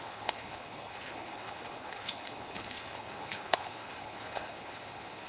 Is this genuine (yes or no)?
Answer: no